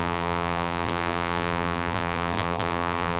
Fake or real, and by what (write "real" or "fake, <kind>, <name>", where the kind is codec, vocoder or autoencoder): fake, vocoder, BigVGAN v2